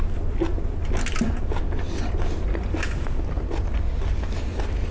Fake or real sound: real